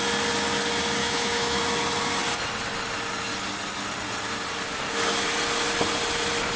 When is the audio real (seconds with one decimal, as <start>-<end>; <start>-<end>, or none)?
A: 0.0-1.0; 1.6-6.6

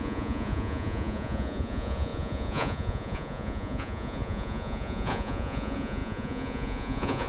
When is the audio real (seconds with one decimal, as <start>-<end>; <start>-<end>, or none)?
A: none

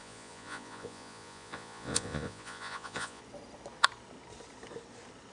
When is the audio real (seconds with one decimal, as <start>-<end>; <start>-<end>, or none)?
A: 3.2-5.3

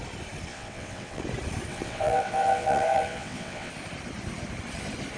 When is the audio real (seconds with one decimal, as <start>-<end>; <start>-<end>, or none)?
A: 0.0-0.5; 1.2-1.7; 3.7-5.2

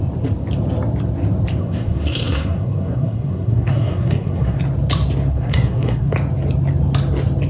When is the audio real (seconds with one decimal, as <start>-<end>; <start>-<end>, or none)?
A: 0.0-1.6; 4.6-5.3; 6.1-7.5